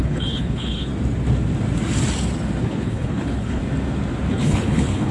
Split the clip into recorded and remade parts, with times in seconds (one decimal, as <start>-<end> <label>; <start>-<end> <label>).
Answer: 0.0-0.9 remade; 0.9-2.6 recorded; 2.6-3.6 remade; 3.6-4.3 recorded; 4.3-5.1 remade